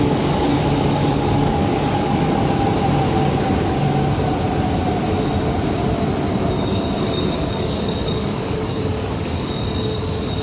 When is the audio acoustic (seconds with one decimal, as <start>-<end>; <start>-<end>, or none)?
2.4-6.5